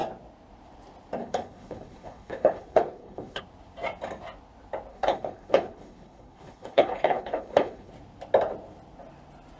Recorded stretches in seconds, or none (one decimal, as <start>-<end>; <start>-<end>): 0.0-1.2; 3.4-4.9; 7.9-9.6